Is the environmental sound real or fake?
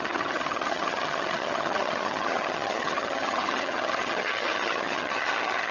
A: fake